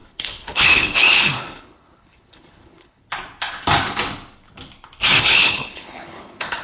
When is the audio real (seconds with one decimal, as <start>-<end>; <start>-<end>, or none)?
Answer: 3.0-5.2